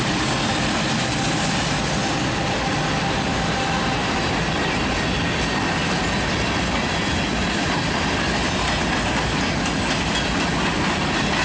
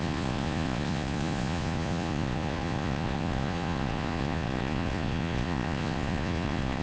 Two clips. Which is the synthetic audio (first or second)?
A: second